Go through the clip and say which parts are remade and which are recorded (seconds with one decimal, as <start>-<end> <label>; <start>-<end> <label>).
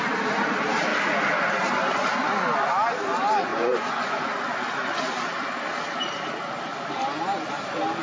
0.0-3.5 recorded; 3.5-4.2 remade; 4.2-8.0 recorded